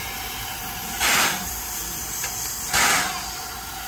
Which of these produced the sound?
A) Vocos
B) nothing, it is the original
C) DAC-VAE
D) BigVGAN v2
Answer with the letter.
B